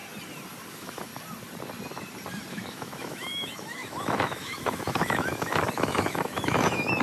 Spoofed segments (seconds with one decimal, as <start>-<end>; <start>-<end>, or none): 0.7-1.1; 2.5-7.0